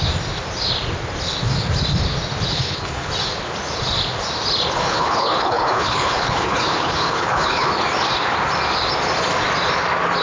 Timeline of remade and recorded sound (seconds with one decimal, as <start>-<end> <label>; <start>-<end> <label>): 0.0-2.5 recorded; 2.5-3.1 remade; 3.1-4.8 recorded; 4.8-7.7 remade; 7.7-10.2 recorded